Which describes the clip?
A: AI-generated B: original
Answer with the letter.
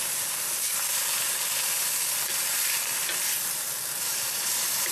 A